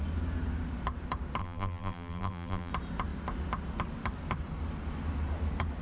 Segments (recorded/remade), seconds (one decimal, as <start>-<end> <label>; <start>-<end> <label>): 0.0-1.4 recorded; 1.4-2.7 remade; 2.7-5.8 recorded